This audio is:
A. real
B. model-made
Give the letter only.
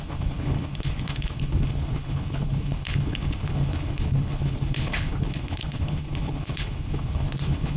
B